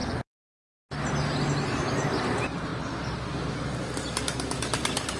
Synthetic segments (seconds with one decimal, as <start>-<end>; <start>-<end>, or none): none